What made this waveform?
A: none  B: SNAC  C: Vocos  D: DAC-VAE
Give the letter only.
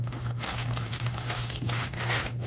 D